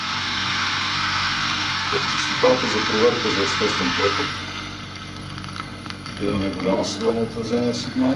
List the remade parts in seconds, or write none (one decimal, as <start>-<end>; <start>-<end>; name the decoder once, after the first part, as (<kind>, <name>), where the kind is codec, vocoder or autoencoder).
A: 0.0-2.5 (codec, SNAC); 3.8-8.2

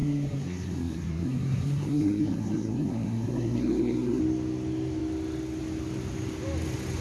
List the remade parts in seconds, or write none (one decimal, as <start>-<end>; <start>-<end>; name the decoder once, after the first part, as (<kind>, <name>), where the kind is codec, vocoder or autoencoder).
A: 0.0-4.2 (codec, SNAC)

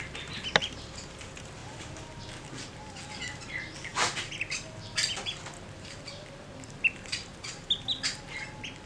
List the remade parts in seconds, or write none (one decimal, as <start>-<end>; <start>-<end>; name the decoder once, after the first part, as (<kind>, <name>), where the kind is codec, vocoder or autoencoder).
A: 1.6-2.2 (vocoder, BigVGAN v2)

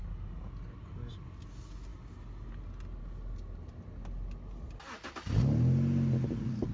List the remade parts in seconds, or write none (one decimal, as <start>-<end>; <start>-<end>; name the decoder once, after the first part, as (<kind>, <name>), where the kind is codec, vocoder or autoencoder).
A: none

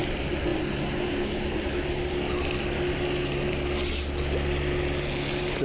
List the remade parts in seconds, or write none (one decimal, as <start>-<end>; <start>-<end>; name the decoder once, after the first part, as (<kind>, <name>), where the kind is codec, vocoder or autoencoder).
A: none

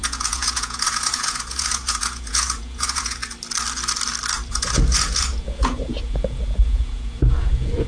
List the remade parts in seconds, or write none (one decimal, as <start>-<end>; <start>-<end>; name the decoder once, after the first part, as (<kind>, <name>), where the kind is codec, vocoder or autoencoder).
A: 0.0-3.2 (vocoder, Vocos); 4.5-7.9

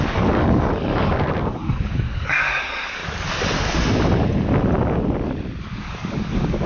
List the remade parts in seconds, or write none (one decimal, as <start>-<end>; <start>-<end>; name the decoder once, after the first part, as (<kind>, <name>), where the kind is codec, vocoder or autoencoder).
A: 0.0-0.9 (codec, DAC); 1.4-3.0; 5.6-6.7

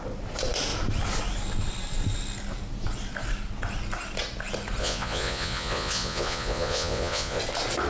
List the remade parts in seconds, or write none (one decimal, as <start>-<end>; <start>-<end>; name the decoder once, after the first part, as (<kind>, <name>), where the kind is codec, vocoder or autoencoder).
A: 4.8-7.4 (vocoder, Vocos)